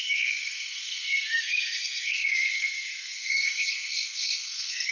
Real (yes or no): no